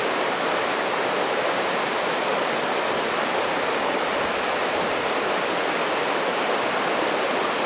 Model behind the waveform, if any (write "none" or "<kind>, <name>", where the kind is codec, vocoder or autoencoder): none